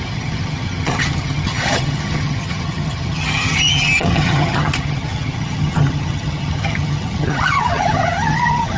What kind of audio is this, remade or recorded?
remade